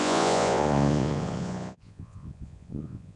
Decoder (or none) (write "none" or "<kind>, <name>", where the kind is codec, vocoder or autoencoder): vocoder, Vocos